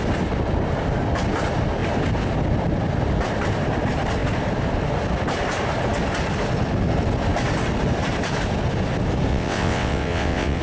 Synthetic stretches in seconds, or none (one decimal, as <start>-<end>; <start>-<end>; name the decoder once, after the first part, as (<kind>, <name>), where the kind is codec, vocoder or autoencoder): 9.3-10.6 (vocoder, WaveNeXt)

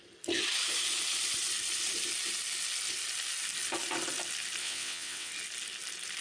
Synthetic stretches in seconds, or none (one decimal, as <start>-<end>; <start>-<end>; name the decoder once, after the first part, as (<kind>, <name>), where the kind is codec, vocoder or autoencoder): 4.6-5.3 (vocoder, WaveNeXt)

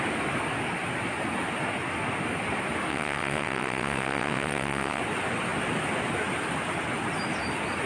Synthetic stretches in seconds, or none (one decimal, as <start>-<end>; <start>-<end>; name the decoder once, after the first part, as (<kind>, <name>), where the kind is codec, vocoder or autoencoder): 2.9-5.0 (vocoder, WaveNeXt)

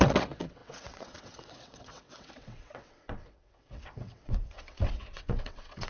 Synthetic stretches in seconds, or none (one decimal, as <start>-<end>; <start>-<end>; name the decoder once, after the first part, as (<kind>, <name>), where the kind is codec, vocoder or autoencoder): 0.0-5.9 (vocoder, WaveNeXt)

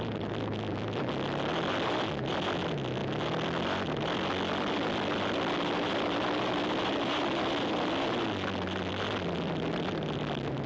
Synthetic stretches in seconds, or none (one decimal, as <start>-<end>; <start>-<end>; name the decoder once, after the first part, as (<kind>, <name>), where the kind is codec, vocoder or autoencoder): none